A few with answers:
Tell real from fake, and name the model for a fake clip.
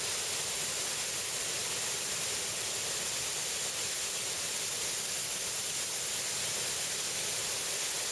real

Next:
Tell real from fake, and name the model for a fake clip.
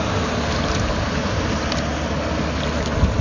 real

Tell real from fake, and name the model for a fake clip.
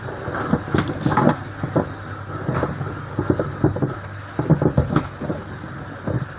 real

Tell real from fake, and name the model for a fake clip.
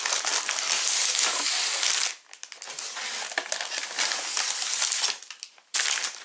real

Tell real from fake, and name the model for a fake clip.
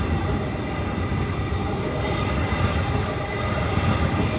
real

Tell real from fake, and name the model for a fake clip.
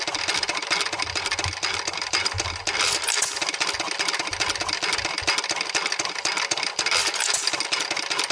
real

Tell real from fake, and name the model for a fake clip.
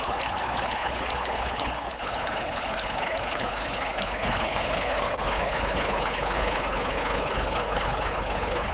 fake, codec, HILCodec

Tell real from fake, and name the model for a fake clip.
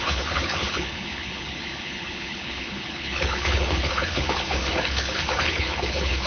fake, codec, HILCodec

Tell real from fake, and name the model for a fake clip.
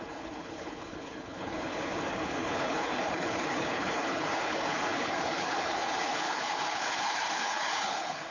fake, codec, HILCodec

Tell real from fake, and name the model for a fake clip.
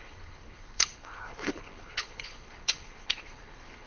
fake, codec, HILCodec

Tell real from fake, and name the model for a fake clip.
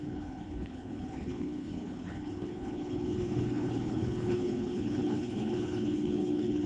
fake, codec, HILCodec